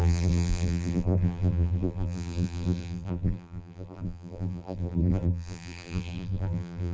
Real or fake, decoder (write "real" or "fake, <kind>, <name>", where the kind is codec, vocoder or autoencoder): fake, vocoder, BigVGAN v2